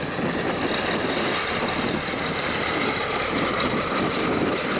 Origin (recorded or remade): remade